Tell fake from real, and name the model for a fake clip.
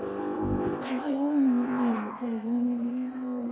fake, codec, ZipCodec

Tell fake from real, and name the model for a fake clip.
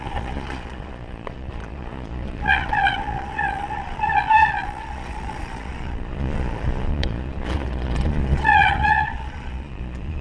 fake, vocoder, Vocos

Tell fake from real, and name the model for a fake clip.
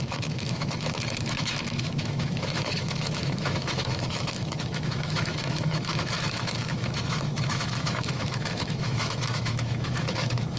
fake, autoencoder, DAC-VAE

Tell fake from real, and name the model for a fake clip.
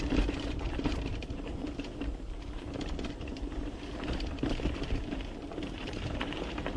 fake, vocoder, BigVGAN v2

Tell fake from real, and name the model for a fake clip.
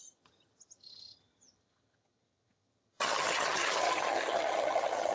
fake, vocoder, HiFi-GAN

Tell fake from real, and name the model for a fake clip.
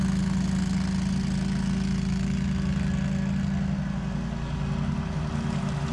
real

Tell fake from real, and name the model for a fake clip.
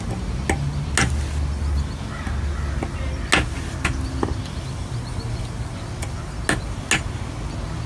real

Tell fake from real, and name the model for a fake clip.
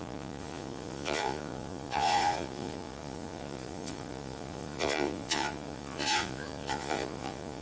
fake, vocoder, Vocos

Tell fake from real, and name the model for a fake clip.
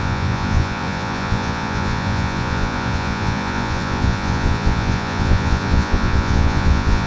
fake, vocoder, Vocos